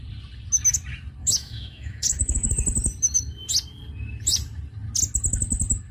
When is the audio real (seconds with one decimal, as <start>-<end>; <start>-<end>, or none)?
0.0-1.2; 2.5-5.9